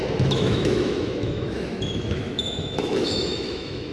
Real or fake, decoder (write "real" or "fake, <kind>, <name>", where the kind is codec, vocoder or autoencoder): fake, autoencoder, DAC-VAE